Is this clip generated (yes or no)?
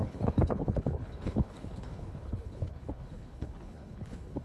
yes